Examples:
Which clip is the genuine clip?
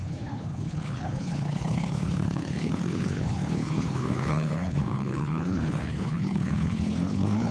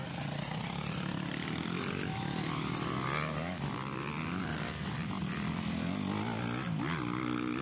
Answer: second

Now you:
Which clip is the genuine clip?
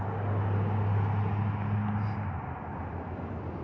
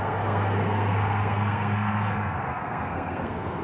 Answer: first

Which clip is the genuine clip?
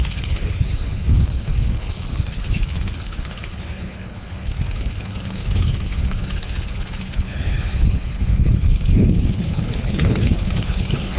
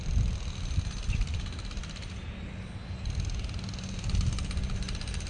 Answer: second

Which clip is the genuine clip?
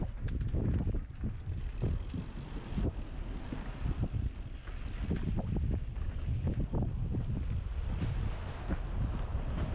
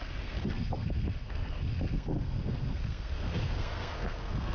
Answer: first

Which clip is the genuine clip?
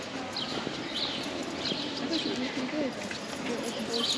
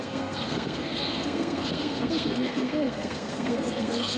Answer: first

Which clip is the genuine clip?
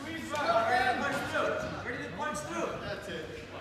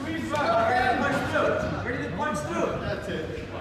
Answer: first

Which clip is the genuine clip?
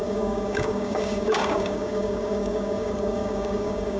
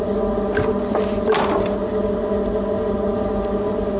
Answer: second